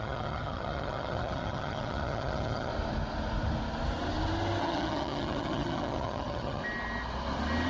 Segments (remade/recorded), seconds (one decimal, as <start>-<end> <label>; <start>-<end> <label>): 0.0-2.7 remade; 2.7-4.6 recorded; 4.6-6.6 remade; 6.6-7.7 recorded